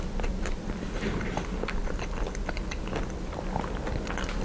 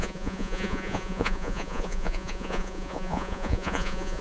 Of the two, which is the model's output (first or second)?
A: second